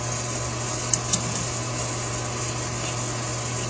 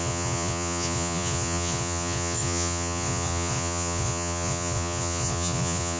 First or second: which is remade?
second